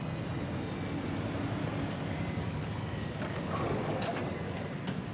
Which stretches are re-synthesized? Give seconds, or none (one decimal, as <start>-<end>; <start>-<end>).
1.6-5.1

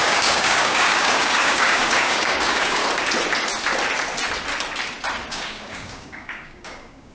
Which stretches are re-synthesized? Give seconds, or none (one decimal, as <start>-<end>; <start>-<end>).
0.0-2.8; 5.3-7.1

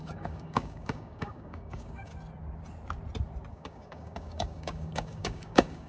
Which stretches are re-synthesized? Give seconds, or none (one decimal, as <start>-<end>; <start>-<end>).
0.0-2.1; 3.5-5.9

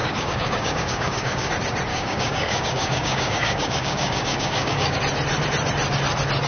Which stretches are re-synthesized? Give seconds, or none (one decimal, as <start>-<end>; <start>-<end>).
0.0-1.5; 1.9-5.0

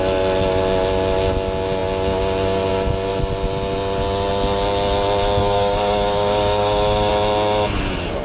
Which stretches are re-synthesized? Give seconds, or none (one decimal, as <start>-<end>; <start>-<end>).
5.4-7.1